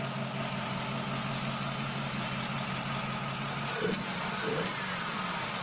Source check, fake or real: real